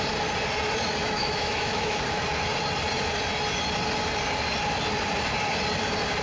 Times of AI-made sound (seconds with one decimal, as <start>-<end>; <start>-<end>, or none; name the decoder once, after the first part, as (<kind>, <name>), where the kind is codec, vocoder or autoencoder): 1.0-2.0 (autoencoder, DAC-VAE)